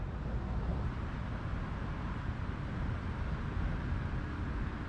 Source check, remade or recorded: recorded